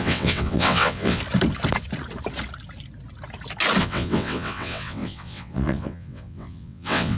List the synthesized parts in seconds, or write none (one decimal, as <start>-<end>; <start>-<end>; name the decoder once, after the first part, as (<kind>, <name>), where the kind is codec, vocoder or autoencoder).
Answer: 0.0-1.2 (vocoder, WaveNeXt); 3.8-7.2